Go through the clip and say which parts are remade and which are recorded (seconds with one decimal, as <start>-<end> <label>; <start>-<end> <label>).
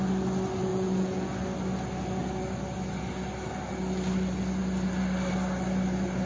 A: 0.0-0.7 recorded; 0.7-1.3 remade; 1.3-6.3 recorded